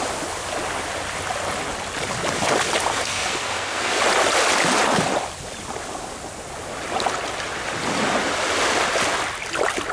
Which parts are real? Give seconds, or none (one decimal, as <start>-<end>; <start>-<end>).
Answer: 0.0-2.9; 4.0-9.9